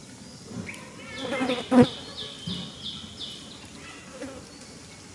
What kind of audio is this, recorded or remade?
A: recorded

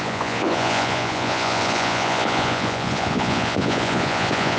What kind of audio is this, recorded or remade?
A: remade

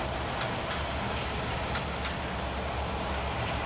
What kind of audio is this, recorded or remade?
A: recorded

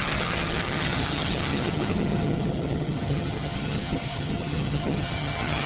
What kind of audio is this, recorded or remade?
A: remade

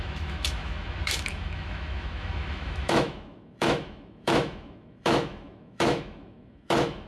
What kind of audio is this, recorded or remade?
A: remade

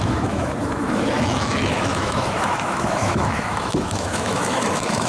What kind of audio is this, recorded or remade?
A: remade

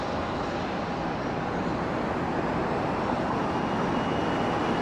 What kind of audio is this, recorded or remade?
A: recorded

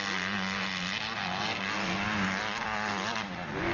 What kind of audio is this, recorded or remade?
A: recorded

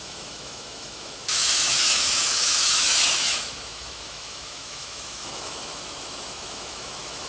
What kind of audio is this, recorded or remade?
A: remade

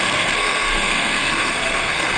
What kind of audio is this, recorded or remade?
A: remade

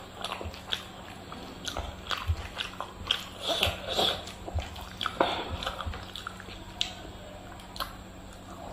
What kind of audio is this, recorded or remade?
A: recorded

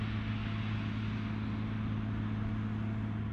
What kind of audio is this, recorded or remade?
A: recorded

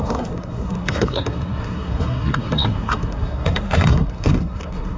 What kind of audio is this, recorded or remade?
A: remade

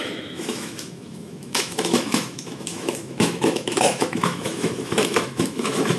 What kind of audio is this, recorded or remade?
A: remade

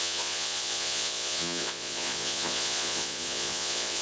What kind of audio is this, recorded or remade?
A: remade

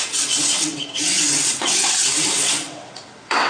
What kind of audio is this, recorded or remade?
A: remade